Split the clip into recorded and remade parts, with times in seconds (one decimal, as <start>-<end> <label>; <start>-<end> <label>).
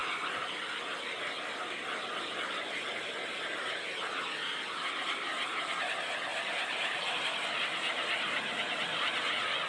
0.0-6.3 recorded; 6.3-8.1 remade; 8.1-9.7 recorded